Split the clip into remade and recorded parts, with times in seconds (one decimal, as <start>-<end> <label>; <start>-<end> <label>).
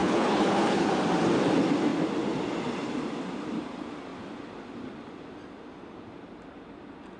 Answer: 0.0-0.9 remade; 0.9-7.2 recorded